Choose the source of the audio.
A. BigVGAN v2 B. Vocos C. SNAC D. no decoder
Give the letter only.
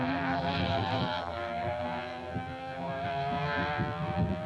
A